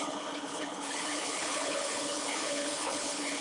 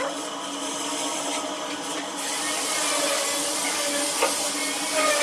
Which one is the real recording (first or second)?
second